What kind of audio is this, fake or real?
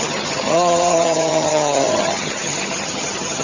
fake